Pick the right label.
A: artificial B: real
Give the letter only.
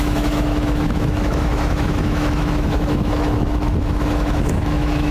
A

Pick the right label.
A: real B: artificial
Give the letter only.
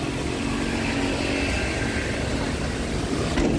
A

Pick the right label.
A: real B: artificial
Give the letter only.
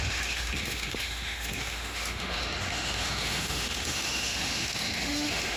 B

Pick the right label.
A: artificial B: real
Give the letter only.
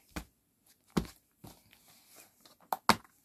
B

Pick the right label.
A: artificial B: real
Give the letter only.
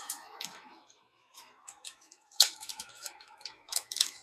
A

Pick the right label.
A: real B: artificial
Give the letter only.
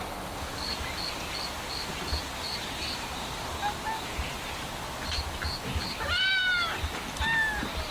A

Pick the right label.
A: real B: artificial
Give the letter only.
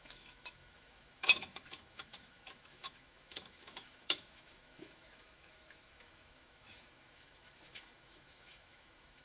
B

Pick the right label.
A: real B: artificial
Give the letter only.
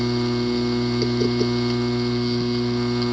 A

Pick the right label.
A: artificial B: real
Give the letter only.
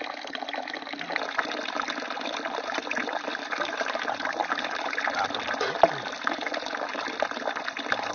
B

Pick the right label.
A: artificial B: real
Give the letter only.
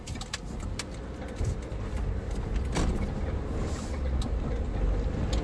B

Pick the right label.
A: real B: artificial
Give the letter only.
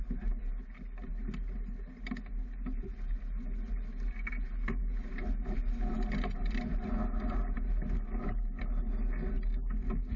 A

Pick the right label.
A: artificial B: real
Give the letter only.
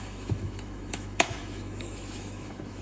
A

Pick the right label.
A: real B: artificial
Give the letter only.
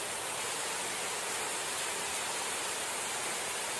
A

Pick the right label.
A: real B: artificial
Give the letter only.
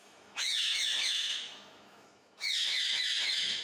B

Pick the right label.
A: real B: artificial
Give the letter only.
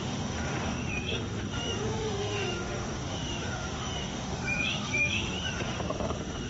B